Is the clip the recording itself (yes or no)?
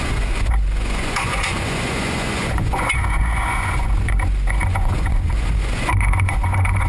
no